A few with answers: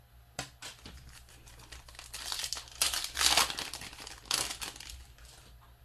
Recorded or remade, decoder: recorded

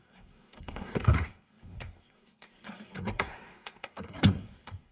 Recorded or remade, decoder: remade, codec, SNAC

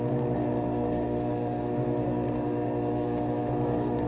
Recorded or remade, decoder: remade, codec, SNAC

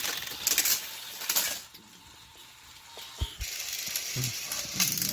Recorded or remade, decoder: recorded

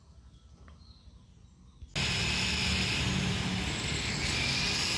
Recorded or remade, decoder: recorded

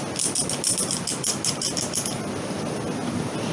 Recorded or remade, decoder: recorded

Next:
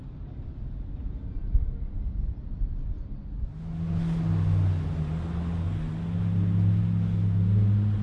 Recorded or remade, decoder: recorded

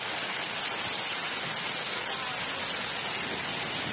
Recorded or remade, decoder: recorded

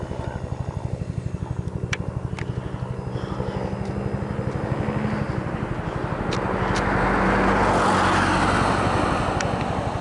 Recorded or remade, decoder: recorded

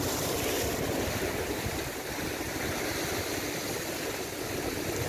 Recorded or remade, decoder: recorded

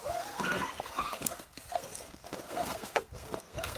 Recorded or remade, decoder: remade, codec, SNAC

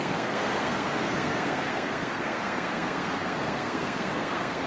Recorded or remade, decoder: remade, codec, SNAC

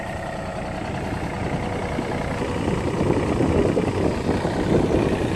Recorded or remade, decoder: recorded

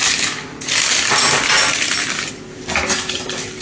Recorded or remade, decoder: recorded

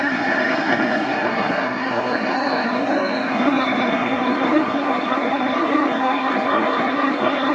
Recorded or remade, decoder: remade, codec, SNAC